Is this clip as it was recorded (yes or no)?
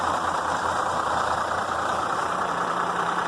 no